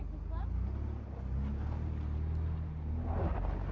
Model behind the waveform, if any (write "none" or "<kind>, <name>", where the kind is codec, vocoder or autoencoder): none